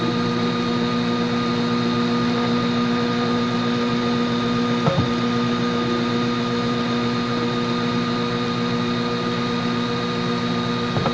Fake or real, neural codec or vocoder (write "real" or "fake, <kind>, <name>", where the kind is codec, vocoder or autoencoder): real